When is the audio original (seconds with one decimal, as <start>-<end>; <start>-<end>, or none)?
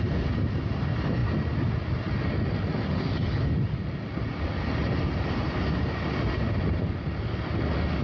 0.0-8.0